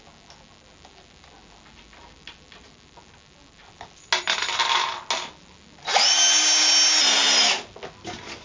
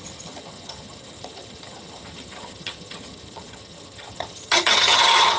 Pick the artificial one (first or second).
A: second